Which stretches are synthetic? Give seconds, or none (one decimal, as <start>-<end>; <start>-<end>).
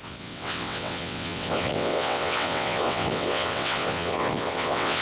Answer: 0.0-5.0